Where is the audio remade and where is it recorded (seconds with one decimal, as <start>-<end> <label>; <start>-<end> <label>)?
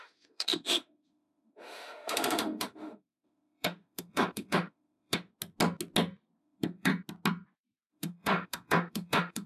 0.0-5.3 remade; 5.3-6.4 recorded; 6.4-6.9 remade; 6.9-7.9 recorded; 7.9-9.5 remade